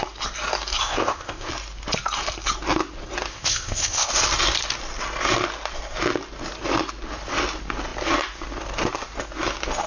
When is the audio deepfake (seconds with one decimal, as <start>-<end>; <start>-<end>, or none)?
0.8-1.5; 3.3-4.1